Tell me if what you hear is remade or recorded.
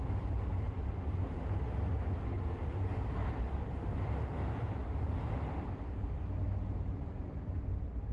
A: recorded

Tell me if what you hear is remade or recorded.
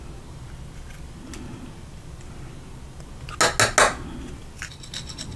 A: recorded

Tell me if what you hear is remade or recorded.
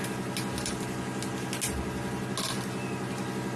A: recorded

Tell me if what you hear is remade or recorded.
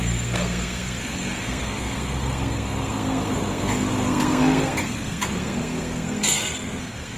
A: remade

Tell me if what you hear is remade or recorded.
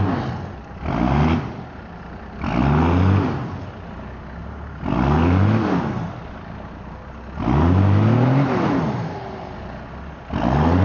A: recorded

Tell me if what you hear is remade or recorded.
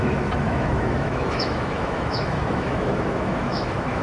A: remade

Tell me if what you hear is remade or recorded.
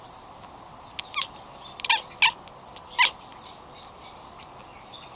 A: recorded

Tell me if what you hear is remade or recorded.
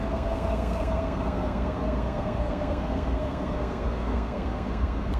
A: remade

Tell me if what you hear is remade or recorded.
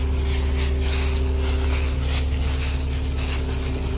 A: recorded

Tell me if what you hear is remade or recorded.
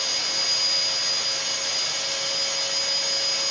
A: recorded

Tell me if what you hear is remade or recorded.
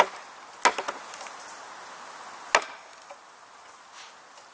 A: recorded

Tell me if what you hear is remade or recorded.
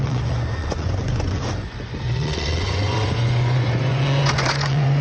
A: remade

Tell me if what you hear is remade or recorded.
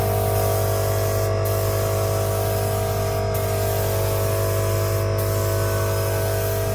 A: recorded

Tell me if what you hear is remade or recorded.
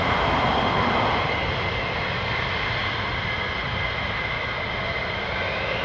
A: recorded